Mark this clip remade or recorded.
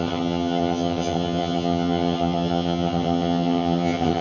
remade